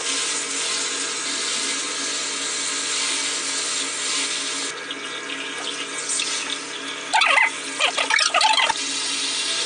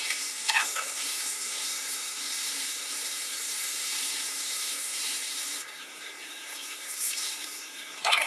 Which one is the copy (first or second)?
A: second